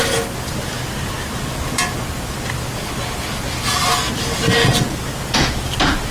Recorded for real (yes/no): yes